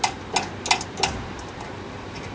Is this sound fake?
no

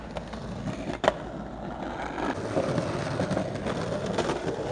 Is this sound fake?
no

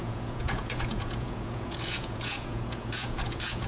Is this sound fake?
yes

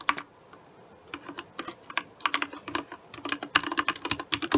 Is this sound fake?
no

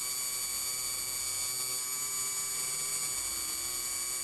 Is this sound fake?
no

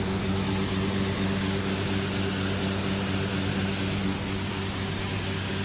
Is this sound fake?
no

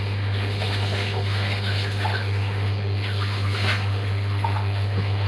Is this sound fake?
yes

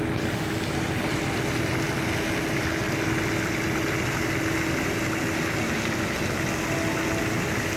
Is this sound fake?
no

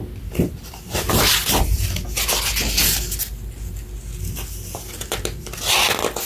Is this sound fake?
no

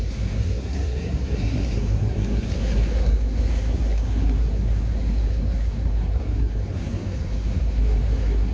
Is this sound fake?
yes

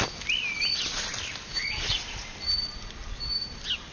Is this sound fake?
no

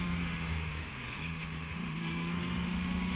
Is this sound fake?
yes